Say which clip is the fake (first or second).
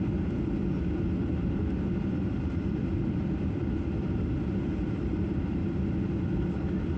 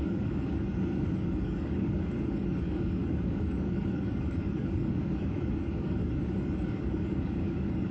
second